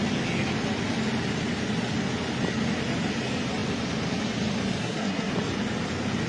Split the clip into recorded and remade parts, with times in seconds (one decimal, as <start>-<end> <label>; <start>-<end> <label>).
0.0-4.8 recorded; 4.8-5.3 remade; 5.3-6.3 recorded

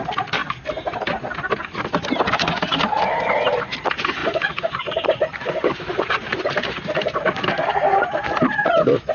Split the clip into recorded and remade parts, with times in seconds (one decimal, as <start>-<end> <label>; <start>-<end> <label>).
0.0-4.2 recorded; 4.2-6.4 remade; 6.4-9.1 recorded